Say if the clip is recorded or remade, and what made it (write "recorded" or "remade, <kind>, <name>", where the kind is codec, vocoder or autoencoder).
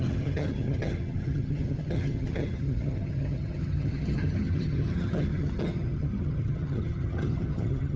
remade, vocoder, HiFi-GAN